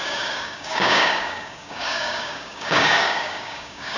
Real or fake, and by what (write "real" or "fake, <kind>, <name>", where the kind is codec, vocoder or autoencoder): fake, codec, DAC